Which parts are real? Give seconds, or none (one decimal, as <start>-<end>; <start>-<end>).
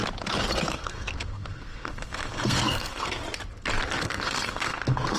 0.0-0.6; 3.2-4.0